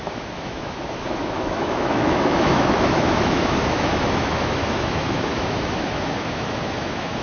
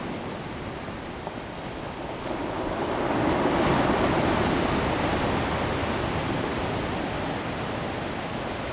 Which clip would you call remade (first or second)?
first